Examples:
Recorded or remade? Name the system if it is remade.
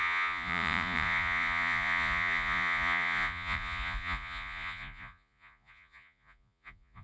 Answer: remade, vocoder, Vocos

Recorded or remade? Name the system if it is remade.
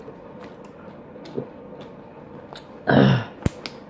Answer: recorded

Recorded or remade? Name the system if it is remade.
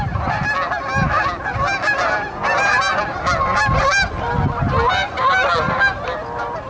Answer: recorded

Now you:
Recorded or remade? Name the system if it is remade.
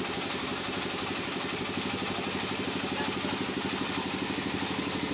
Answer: recorded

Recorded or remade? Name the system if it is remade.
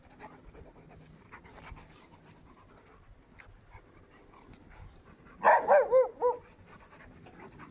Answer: recorded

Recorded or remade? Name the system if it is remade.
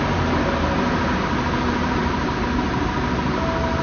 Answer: recorded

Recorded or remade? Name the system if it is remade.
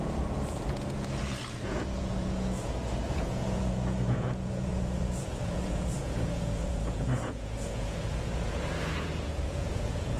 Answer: remade, vocoder, Vocos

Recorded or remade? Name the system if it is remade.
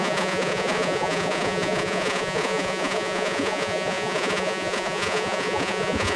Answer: remade, vocoder, Vocos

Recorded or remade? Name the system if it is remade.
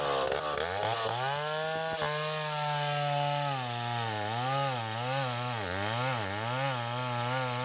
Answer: recorded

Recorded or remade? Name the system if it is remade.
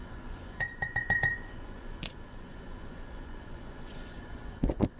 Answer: remade, vocoder, Vocos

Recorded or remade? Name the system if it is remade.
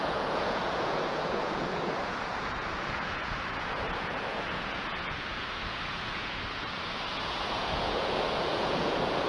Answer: remade, vocoder, Vocos